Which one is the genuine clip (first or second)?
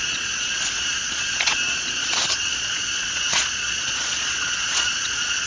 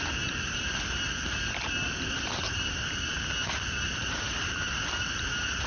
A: second